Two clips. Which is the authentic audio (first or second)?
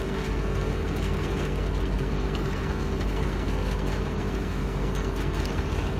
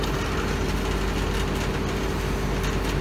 second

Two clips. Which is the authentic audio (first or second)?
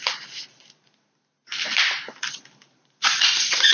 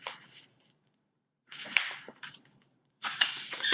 first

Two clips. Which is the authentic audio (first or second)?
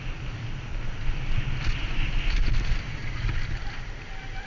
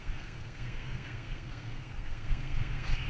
first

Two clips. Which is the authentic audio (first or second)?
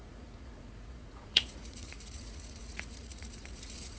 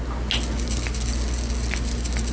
second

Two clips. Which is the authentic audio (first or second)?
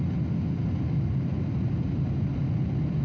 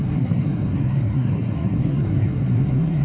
first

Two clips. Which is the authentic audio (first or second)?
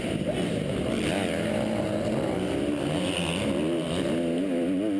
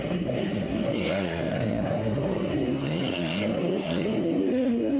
first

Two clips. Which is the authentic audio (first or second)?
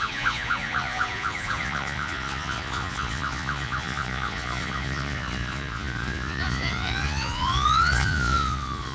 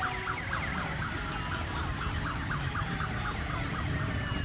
second